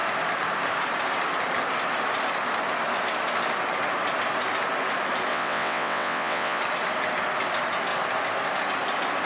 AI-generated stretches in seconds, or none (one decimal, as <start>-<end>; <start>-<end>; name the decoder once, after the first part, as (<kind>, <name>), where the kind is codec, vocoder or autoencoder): 5.3-6.6 (vocoder, WaveNeXt)